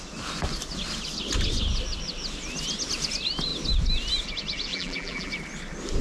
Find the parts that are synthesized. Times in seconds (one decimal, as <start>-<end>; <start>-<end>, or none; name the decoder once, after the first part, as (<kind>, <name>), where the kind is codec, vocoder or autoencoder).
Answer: 4.7-5.3 (vocoder, BigVGAN v2)